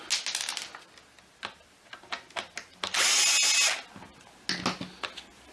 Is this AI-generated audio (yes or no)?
no